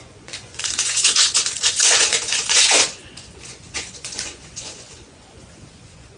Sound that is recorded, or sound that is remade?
remade